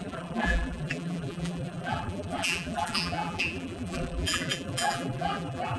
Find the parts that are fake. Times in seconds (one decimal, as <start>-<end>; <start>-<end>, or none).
0.0-5.8